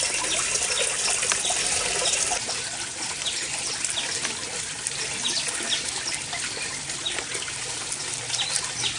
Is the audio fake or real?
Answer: real